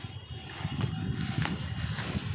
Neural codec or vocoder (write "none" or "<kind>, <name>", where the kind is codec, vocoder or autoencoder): none